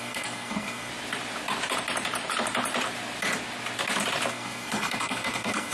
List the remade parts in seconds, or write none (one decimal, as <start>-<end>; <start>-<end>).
0.0-0.9; 4.3-5.7